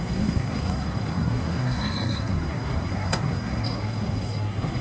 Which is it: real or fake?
fake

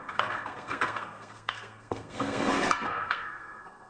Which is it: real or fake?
fake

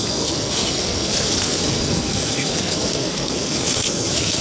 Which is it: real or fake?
fake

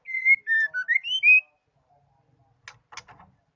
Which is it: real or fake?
real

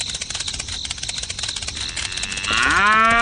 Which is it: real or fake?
real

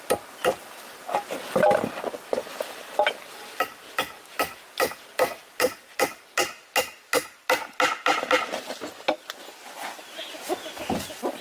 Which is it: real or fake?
real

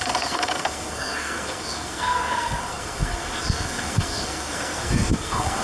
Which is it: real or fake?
fake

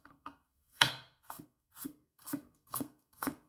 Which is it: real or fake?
fake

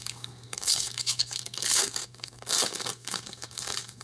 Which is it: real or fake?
fake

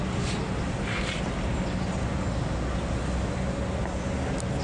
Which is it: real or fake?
real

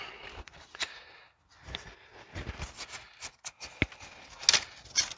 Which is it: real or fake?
real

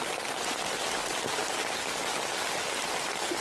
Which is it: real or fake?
real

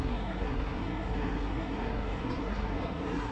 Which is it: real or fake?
fake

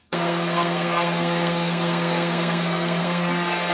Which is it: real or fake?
fake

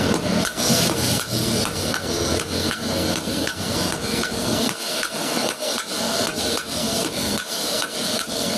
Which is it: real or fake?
fake